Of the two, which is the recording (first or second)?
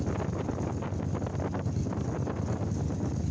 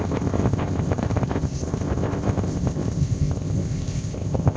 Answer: first